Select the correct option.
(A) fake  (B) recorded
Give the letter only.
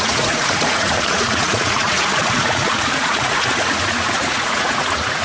A